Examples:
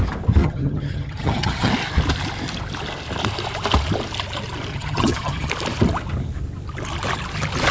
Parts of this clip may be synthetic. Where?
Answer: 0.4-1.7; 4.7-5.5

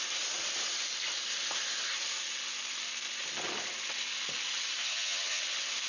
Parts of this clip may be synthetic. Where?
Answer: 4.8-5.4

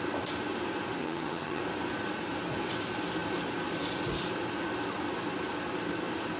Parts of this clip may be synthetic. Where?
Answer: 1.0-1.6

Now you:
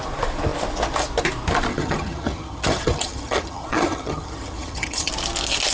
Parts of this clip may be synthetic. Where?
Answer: 1.7-5.1

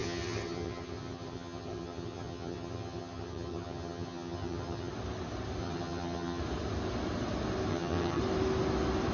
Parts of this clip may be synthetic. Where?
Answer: 0.0-4.9; 5.6-6.4; 7.7-8.2

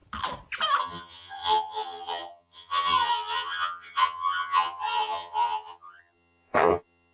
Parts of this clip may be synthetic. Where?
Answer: 0.8-7.1

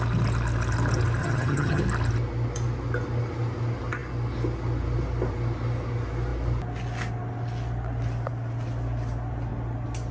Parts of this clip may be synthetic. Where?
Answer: 1.2-1.8

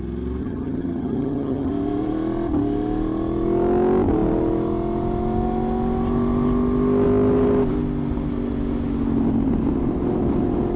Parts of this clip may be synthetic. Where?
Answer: 0.4-1.7